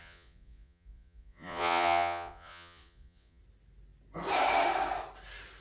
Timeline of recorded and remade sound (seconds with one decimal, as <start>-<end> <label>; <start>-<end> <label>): 0.0-3.4 remade; 3.4-5.6 recorded